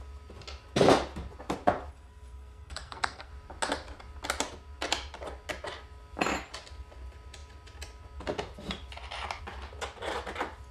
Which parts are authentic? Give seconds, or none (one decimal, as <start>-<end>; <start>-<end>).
0.0-1.9; 3.3-10.7